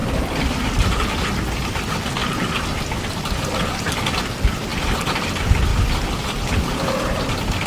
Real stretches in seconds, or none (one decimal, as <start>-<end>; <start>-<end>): 0.0-1.3; 2.2-3.6; 5.7-6.2